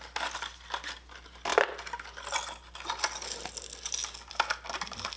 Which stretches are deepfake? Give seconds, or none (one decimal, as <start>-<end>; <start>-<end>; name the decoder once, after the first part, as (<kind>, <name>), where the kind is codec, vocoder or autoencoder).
none